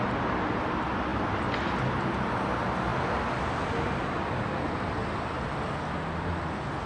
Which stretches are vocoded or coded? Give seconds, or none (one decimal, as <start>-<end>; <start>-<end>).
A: none